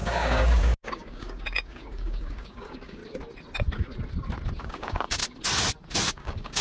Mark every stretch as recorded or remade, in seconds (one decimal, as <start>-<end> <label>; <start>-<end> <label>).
0.0-3.0 remade; 3.0-4.6 recorded; 4.6-5.2 remade; 5.2-6.1 recorded; 6.1-6.6 remade